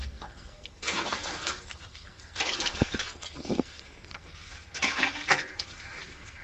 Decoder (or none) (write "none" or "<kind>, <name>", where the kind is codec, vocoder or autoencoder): codec, SNAC